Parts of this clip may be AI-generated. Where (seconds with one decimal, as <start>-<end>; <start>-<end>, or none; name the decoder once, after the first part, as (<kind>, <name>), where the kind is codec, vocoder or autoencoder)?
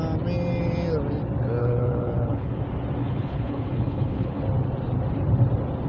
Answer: 1.6-2.6 (codec, HILCodec); 3.0-4.4